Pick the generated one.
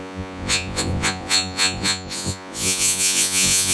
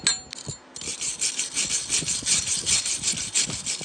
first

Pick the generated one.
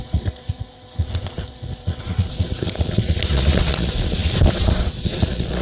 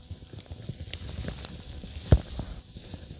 first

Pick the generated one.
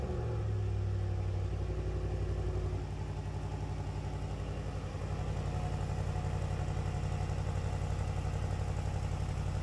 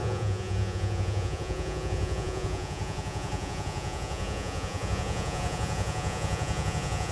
second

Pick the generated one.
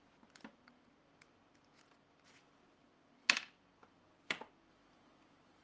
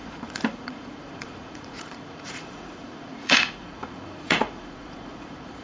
second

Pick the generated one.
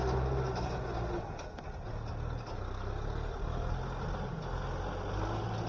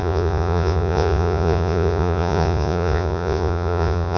second